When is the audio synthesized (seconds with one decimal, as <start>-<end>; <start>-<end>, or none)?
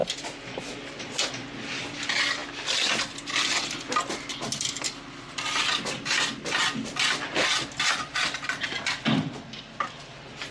none